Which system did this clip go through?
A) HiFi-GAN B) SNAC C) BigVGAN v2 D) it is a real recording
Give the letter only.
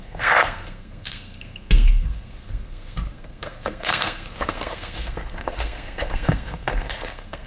B